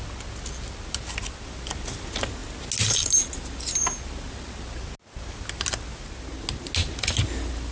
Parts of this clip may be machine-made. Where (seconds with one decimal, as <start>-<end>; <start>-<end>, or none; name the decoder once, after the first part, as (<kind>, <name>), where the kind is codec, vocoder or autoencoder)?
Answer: none